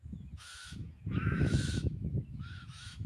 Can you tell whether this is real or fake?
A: fake